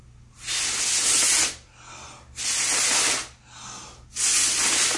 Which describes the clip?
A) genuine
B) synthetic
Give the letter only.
A